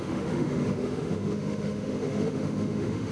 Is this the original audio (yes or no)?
no